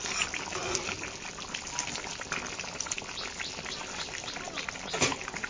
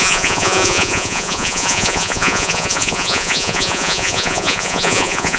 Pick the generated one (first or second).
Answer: second